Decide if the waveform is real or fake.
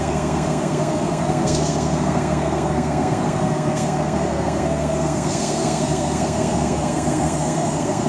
fake